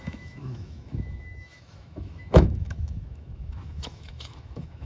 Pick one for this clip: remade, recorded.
remade